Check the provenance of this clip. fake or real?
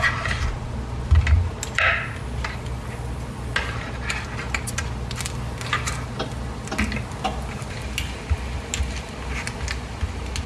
real